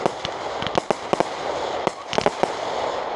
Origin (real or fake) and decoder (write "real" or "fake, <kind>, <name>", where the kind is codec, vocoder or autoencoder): real